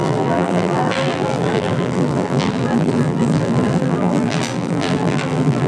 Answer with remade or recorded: remade